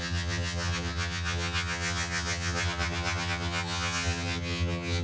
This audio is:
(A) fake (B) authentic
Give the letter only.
A